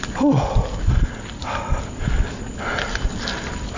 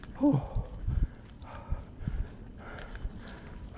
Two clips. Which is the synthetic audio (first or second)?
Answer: second